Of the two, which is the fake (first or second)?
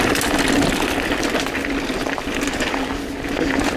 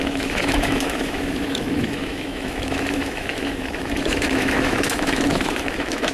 second